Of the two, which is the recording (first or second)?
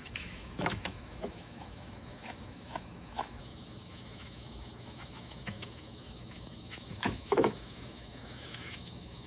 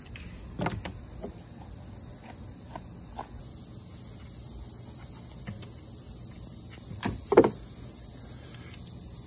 second